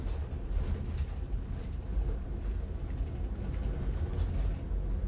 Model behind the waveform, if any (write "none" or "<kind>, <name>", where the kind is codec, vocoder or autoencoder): none